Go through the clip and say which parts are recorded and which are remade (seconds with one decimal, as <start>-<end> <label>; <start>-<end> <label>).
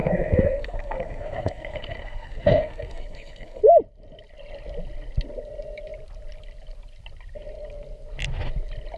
0.0-3.6 remade; 3.6-9.0 recorded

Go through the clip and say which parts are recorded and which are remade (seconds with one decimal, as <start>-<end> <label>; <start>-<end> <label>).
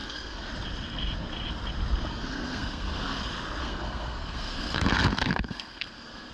0.0-0.5 remade; 0.5-2.1 recorded; 2.1-3.2 remade; 3.2-3.6 recorded; 3.6-6.3 remade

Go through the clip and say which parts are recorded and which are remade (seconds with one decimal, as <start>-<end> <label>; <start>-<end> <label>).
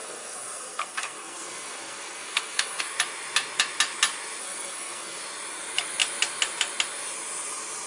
0.0-2.8 remade; 2.8-4.4 recorded; 4.4-5.2 remade; 5.2-7.9 recorded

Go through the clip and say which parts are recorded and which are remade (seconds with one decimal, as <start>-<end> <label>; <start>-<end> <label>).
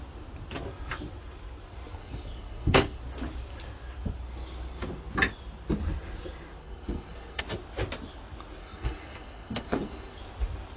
0.0-2.0 recorded; 2.0-3.0 remade; 3.0-6.6 recorded; 6.6-7.4 remade; 7.4-8.6 recorded; 8.6-10.2 remade; 10.2-10.8 recorded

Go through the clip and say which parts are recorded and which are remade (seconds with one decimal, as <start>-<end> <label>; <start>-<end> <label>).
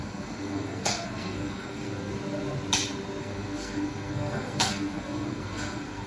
0.0-2.1 remade; 2.1-3.2 recorded; 3.2-6.1 remade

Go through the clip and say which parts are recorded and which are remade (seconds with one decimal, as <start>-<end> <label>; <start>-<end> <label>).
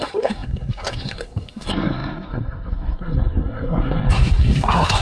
0.0-5.0 remade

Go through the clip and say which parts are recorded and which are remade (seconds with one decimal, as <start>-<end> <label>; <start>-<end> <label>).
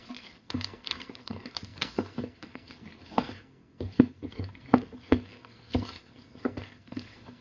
0.0-7.4 remade